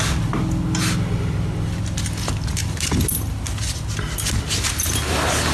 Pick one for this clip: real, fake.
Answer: real